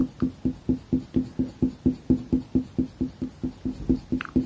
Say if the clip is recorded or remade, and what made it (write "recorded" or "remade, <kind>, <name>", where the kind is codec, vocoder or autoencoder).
recorded